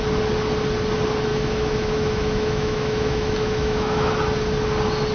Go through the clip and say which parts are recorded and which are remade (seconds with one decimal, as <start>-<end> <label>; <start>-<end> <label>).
0.0-1.3 recorded; 1.3-4.1 remade; 4.1-5.1 recorded